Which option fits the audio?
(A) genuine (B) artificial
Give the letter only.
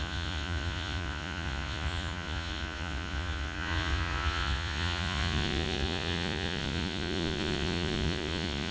B